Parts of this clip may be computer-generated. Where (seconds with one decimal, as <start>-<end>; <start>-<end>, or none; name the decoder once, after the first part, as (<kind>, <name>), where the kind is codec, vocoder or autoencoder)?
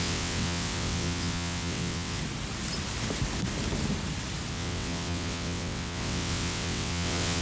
0.0-2.2 (vocoder, WaveNeXt); 4.5-7.4